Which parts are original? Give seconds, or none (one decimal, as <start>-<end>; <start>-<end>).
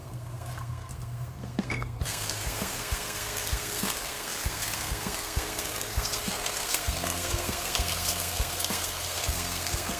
none